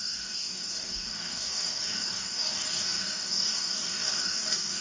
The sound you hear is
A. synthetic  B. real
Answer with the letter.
A